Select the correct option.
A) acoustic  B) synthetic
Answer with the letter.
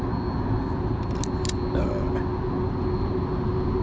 A